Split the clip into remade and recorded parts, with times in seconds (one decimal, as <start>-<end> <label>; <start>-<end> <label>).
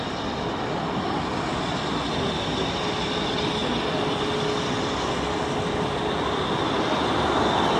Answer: 0.0-7.8 recorded